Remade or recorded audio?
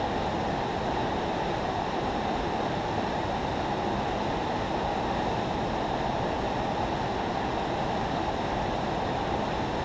recorded